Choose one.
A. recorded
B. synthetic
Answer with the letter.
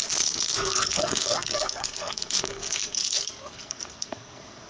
B